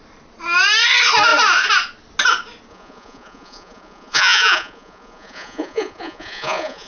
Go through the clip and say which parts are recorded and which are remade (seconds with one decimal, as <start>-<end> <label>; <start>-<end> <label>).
0.0-2.7 recorded; 2.7-6.9 remade